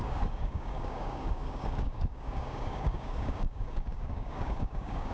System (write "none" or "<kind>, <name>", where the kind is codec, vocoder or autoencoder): codec, DAC